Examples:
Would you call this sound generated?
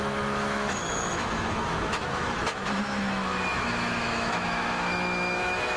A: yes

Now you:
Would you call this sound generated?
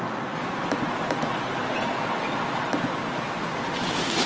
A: no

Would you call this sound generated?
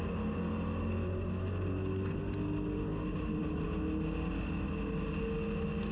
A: no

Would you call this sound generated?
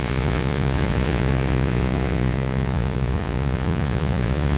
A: yes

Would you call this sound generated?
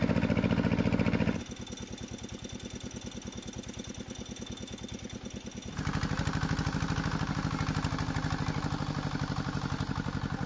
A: no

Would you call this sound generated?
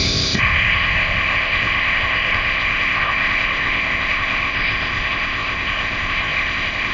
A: yes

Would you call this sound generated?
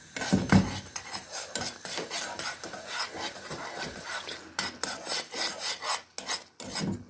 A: no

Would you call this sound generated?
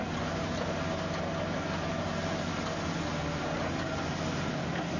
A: no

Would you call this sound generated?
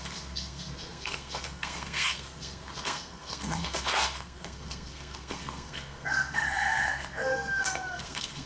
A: yes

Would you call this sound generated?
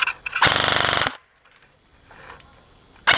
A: no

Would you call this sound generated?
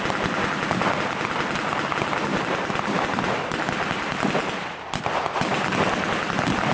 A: no